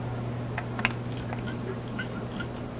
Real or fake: real